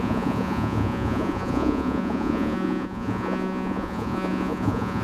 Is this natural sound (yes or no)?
no